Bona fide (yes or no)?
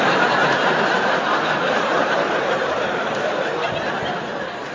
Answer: yes